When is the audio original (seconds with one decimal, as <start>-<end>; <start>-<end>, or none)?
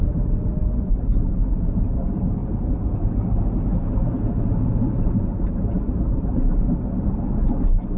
0.0-8.0